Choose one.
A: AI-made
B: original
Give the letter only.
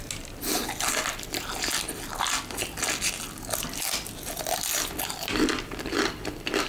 B